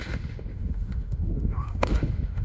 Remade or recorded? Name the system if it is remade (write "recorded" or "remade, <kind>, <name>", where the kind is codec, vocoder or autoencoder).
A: remade, autoencoder, DAC-VAE